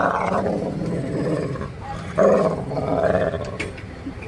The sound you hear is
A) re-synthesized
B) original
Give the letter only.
A